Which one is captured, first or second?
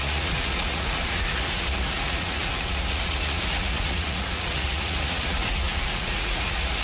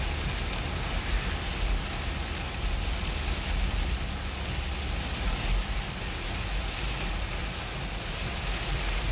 second